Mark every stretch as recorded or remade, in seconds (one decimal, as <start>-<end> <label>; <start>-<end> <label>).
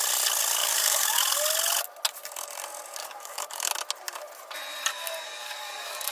0.0-0.6 recorded; 0.6-1.2 remade; 1.2-3.0 recorded; 3.0-3.7 remade; 3.7-4.9 recorded; 4.9-6.1 remade